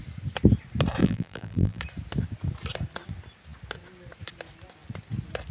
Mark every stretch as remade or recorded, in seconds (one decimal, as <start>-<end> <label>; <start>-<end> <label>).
0.0-1.0 recorded; 1.0-1.8 remade; 1.8-5.5 recorded